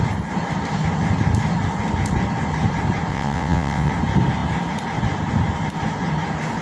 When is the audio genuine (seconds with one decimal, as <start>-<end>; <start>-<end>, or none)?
0.0-3.1; 3.9-6.6